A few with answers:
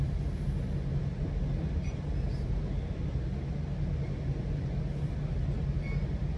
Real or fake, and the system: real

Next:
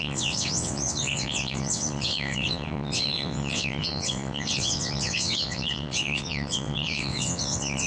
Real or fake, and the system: fake, vocoder, WaveNeXt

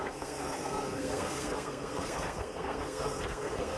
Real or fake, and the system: fake, codec, SNAC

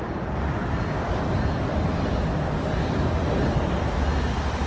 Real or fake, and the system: real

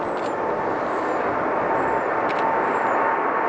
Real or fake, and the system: real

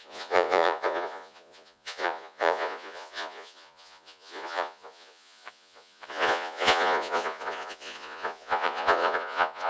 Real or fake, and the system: fake, vocoder, Vocos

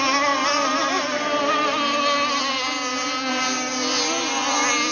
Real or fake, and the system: real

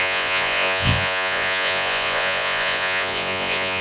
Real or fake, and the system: fake, vocoder, Vocos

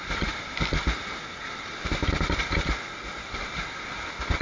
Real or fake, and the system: real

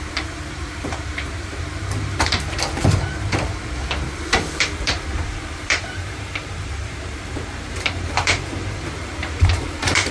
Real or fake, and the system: fake, vocoder, BigVGAN v2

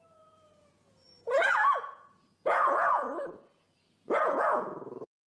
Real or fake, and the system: fake, vocoder, Vocos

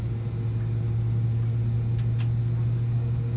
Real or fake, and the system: real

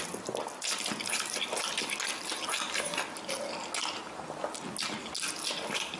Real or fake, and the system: real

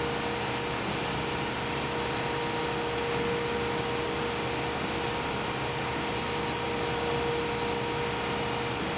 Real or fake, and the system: real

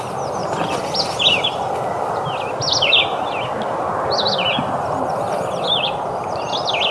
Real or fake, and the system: real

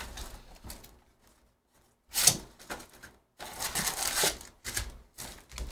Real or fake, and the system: real